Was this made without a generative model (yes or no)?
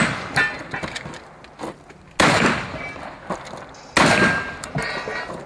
yes